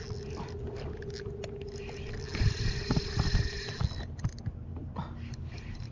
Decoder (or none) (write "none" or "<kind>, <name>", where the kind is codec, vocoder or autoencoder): none